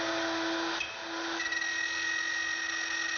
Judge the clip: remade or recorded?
recorded